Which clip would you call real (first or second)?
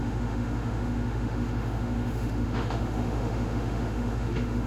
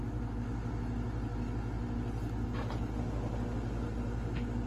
second